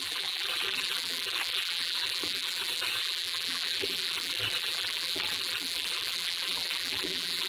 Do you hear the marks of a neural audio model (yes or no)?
yes